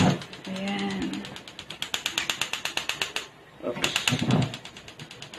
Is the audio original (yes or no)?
yes